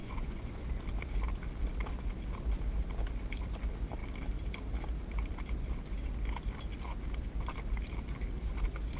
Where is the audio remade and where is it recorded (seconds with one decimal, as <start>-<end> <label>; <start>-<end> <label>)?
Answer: 0.0-0.7 remade; 0.7-9.0 recorded